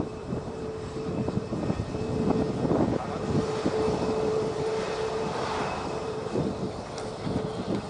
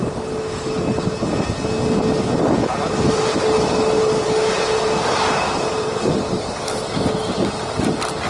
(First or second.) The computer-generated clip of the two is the first